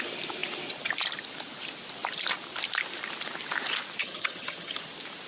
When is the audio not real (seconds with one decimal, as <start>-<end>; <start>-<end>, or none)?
4.0-4.8